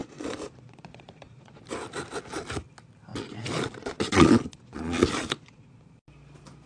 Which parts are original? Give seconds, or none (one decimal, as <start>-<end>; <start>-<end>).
1.6-3.1; 5.7-6.7